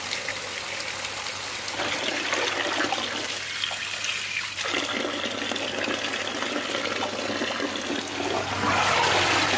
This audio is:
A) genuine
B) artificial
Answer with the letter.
A